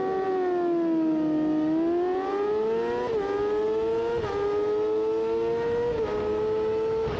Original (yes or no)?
yes